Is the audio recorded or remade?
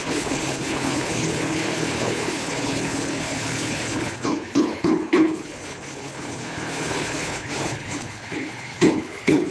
remade